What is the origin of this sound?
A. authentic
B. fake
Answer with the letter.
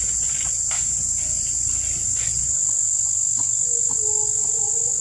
A